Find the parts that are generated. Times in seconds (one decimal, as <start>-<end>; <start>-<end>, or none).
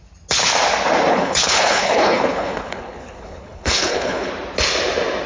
1.1-4.3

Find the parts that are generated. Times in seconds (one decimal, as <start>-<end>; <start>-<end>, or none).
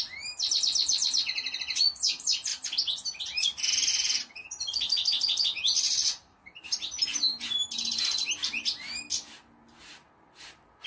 none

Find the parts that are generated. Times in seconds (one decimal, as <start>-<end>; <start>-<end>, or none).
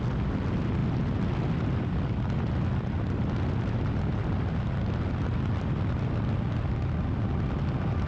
none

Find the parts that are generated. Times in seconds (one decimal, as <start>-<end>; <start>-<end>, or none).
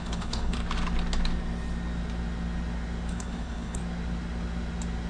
0.0-0.6; 3.1-3.8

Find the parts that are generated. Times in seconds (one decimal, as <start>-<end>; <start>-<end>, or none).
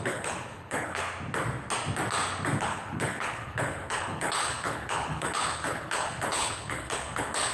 0.0-1.0; 2.6-7.5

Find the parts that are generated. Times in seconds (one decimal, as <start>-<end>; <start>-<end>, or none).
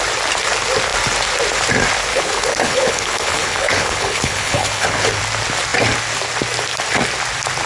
2.1-5.2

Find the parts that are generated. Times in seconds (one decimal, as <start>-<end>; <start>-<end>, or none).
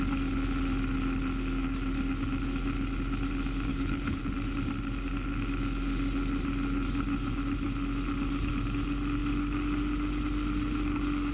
3.7-4.2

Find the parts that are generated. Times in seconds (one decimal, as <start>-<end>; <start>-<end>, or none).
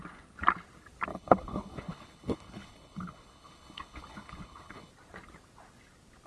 1.1-4.9